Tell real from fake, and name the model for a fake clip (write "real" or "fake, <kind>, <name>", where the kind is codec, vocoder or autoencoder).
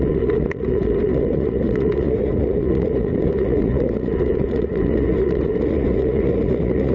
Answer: fake, vocoder, Vocos